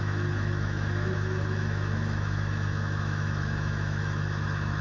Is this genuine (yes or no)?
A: no